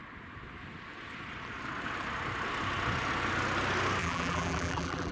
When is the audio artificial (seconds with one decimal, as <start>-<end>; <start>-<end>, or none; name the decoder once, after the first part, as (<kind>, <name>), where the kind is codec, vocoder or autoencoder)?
4.0-5.1 (vocoder, BigVGAN v2)